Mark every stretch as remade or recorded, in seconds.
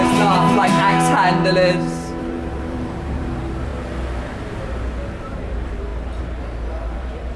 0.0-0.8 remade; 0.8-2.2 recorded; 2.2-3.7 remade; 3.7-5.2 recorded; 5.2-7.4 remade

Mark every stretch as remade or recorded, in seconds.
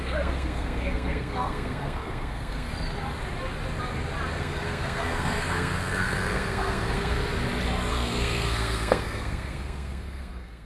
0.0-2.7 remade; 2.7-4.4 recorded; 4.4-7.2 remade; 7.2-7.9 recorded; 7.9-10.6 remade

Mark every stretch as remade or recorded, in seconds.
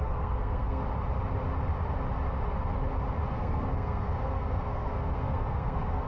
0.0-0.8 remade; 0.8-3.3 recorded; 3.3-6.1 remade